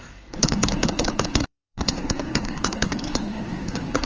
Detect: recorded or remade remade